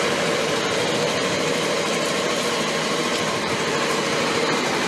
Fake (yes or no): no